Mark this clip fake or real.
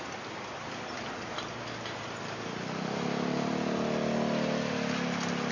real